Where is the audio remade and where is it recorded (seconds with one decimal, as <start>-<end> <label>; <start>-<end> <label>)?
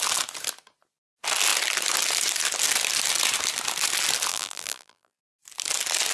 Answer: 0.0-4.3 recorded; 4.3-5.2 remade; 5.2-6.1 recorded